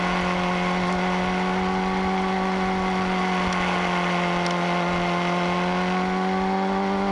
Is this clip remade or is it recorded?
recorded